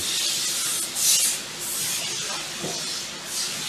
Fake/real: real